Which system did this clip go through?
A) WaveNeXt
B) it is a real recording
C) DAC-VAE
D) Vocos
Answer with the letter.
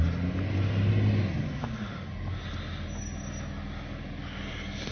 B